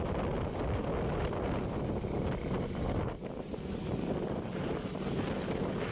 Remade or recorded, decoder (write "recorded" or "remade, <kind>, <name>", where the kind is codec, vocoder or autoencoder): recorded